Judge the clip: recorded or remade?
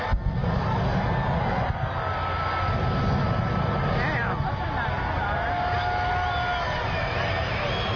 recorded